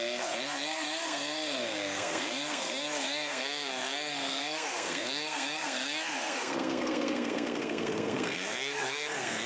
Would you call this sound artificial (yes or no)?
yes